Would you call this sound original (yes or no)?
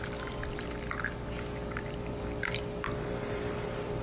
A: yes